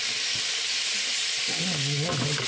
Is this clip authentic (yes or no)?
yes